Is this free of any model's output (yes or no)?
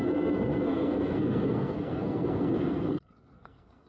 no